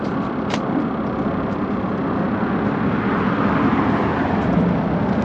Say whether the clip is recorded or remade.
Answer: recorded